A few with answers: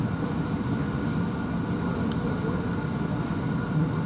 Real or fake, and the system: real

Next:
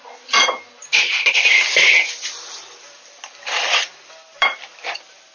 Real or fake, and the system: fake, vocoder, BigVGAN v2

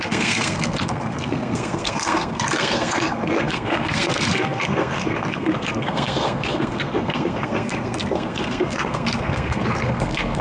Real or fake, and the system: fake, codec, SNAC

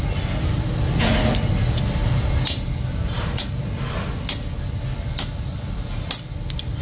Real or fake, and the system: real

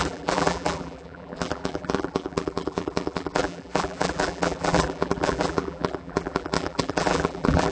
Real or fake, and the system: fake, vocoder, BigVGAN v2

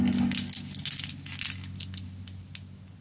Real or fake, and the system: real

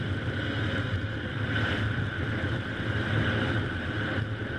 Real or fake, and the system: real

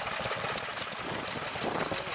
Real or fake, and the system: real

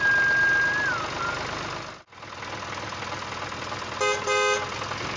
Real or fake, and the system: real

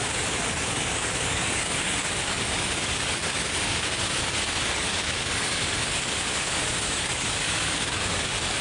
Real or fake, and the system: fake, codec, DAC